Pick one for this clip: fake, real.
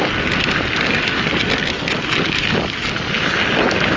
real